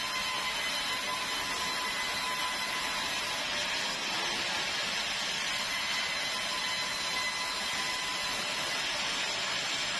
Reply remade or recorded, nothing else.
recorded